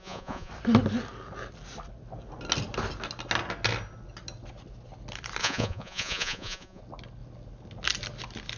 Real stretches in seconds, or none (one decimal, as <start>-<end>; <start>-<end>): 0.5-5.4; 6.8-8.6